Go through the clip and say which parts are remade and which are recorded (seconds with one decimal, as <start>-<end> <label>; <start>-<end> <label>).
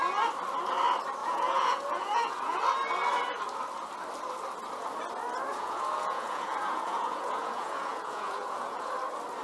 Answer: 0.0-1.2 recorded; 1.2-2.6 remade; 2.6-5.5 recorded; 5.5-8.9 remade; 8.9-9.4 recorded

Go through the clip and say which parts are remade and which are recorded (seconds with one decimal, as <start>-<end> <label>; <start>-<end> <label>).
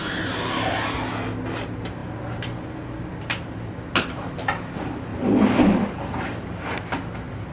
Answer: 0.0-7.5 recorded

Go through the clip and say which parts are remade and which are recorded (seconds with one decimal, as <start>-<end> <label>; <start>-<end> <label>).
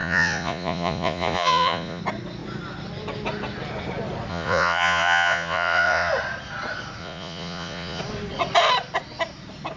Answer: 0.0-2.0 remade; 2.0-4.3 recorded; 4.3-6.1 remade; 6.1-7.0 recorded; 7.0-8.0 remade; 8.0-9.8 recorded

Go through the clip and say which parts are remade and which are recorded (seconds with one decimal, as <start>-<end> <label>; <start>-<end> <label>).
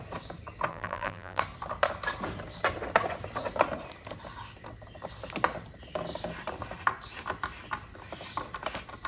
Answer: 0.0-0.7 recorded; 0.7-1.4 remade; 1.4-9.1 recorded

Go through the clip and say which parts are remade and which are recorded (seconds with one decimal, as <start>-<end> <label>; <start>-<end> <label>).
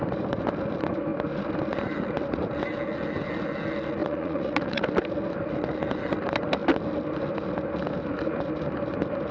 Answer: 0.0-4.0 recorded; 4.0-4.8 remade; 4.8-9.3 recorded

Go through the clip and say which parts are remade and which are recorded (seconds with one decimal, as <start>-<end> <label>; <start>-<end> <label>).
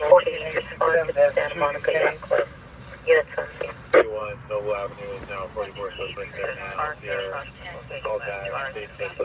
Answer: 0.0-1.8 recorded; 1.8-2.6 remade; 2.6-9.2 recorded